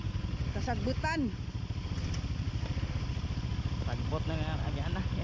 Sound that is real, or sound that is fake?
real